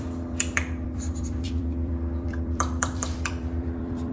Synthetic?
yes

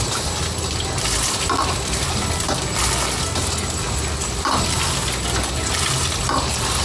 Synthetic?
no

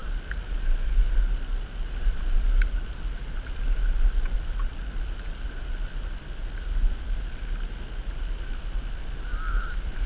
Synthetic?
no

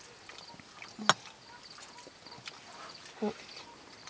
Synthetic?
no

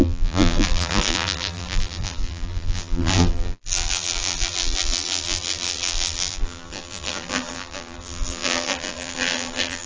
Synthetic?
yes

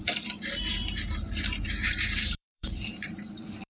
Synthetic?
yes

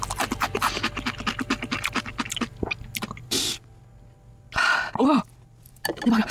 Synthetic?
no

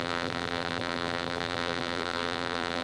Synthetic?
yes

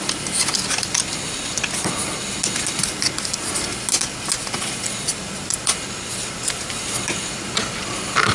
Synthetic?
no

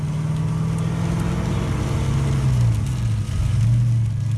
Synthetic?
no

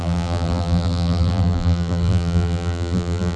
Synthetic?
yes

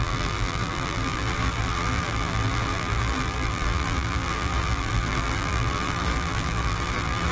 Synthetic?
yes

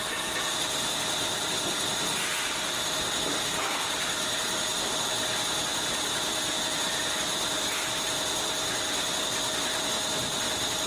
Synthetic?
no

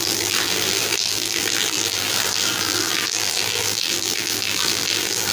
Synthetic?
yes